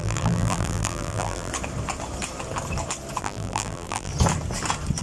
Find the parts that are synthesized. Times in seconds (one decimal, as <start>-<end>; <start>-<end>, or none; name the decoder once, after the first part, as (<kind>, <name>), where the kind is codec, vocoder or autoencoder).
0.0-1.5 (vocoder, BigVGAN v2); 3.2-4.1